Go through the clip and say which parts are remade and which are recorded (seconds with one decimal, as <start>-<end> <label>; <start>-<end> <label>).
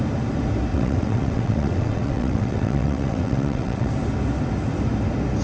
0.0-0.7 recorded; 0.7-3.9 remade; 3.9-5.4 recorded